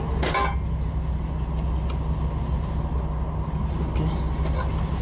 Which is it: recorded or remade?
recorded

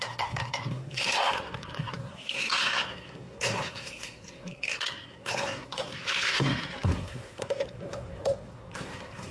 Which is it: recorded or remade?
remade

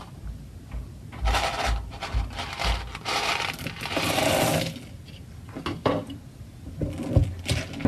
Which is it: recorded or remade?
recorded